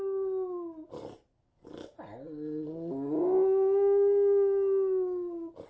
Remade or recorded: recorded